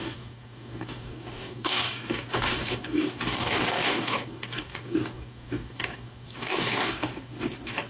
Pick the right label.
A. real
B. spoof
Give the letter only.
B